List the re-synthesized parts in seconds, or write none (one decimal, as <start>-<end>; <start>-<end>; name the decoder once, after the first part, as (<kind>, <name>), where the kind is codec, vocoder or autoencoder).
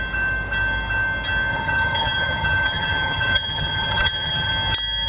1.5-4.5 (vocoder, HiFi-GAN)